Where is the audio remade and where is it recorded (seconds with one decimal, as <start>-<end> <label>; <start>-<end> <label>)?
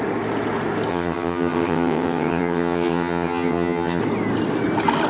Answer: 0.0-0.9 recorded; 0.9-4.0 remade; 4.0-5.1 recorded